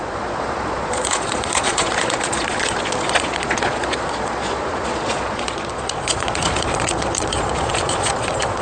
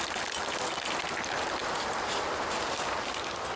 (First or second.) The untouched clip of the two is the second